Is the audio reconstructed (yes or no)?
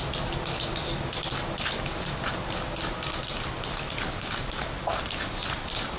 no